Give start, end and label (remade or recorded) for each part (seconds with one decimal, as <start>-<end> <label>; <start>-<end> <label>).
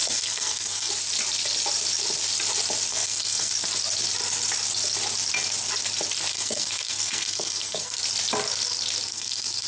0.0-0.9 remade; 0.9-2.9 recorded; 2.9-3.5 remade; 3.5-6.3 recorded; 6.3-8.0 remade; 8.0-9.1 recorded; 9.1-9.7 remade